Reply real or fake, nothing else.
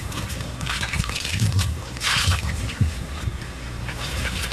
fake